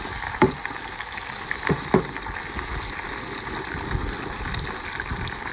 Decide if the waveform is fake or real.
real